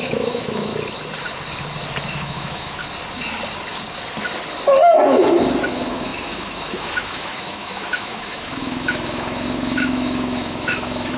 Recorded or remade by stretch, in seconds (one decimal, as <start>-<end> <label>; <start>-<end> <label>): 0.0-0.7 remade; 0.7-2.1 recorded; 2.1-2.8 remade; 2.8-5.6 recorded; 5.6-11.2 remade